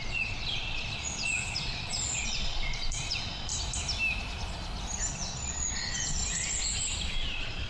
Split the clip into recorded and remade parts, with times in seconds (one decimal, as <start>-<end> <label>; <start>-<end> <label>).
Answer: 0.0-3.5 remade; 3.5-5.1 recorded; 5.1-6.2 remade; 6.2-7.1 recorded; 7.1-7.7 remade